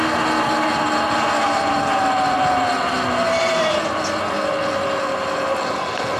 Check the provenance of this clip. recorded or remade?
recorded